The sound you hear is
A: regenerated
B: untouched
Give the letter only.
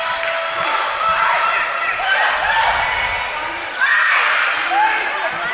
B